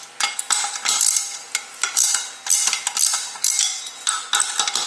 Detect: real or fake real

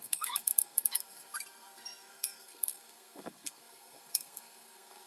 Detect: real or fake fake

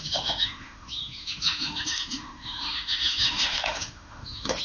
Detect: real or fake fake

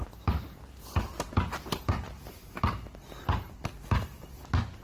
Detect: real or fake real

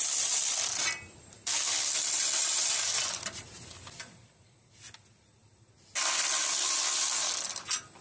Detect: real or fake real